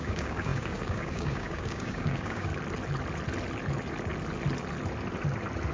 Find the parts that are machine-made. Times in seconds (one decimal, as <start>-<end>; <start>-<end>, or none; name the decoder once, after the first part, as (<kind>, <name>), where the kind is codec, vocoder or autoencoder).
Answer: 0.0-2.5 (codec, DAC)